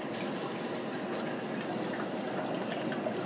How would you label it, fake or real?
real